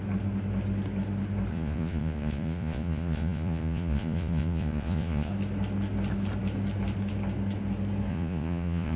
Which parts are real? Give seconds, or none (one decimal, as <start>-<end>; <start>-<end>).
0.0-1.5; 5.3-8.1